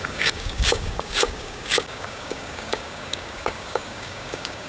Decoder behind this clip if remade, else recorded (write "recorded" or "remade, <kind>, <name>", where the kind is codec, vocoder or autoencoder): remade, codec, DAC